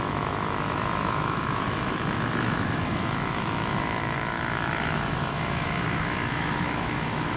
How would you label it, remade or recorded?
remade